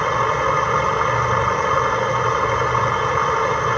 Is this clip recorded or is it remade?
recorded